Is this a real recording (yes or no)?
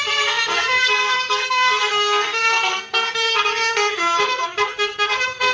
no